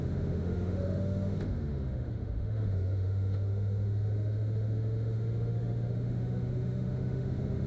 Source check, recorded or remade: remade